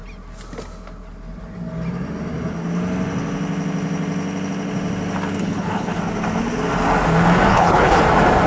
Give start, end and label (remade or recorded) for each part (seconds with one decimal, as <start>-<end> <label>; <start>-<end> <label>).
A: 0.0-5.4 recorded; 5.4-6.0 remade; 6.0-7.5 recorded; 7.5-8.0 remade; 8.0-8.5 recorded